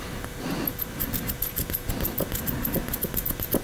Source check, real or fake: real